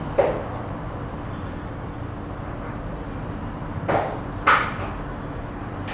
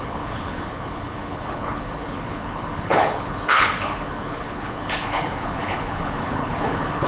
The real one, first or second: first